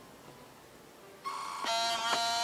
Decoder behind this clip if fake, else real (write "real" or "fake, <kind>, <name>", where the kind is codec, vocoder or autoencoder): real